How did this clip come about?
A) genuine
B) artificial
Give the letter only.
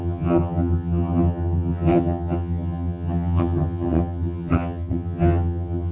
B